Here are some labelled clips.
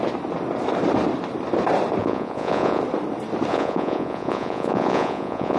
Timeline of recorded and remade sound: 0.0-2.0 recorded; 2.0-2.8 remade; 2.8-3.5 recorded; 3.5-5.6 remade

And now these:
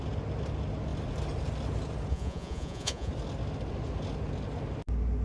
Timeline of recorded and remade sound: 0.0-2.1 recorded; 2.1-3.1 remade; 3.1-5.2 recorded

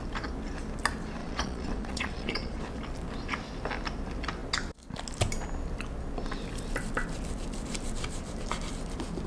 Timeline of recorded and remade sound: 0.0-1.2 recorded; 1.2-2.6 remade; 2.6-9.3 recorded

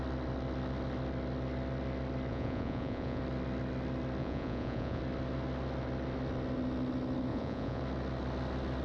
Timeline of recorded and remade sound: 0.0-2.3 recorded; 2.3-3.2 remade; 3.2-4.2 recorded; 4.2-5.0 remade; 5.0-7.3 recorded; 7.3-7.8 remade; 7.8-8.8 recorded